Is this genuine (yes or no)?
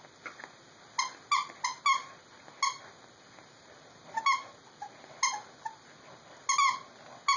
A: yes